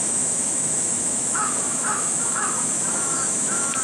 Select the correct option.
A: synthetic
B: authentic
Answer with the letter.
A